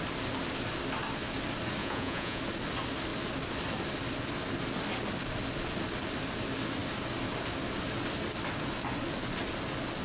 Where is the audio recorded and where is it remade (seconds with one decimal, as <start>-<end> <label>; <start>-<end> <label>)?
0.0-1.8 recorded; 1.8-2.4 remade; 2.4-10.0 recorded